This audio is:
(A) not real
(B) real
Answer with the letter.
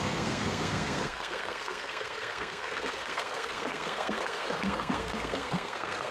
A